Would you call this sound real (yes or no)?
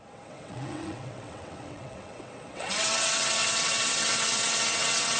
no